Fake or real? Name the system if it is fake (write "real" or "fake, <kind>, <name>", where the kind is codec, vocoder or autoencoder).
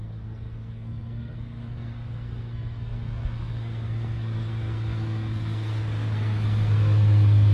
fake, codec, SNAC